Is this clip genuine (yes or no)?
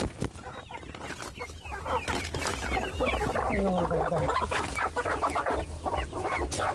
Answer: yes